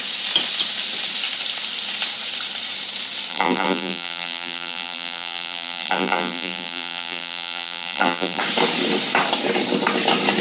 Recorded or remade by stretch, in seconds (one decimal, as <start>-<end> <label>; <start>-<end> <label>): 0.0-3.3 recorded; 3.3-8.4 remade; 8.4-10.4 recorded